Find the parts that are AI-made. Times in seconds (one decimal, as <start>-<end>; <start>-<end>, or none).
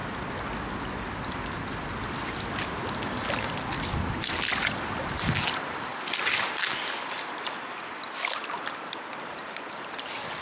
4.8-5.9; 9.2-10.4